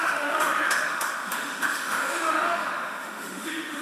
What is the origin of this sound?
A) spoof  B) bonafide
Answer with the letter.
A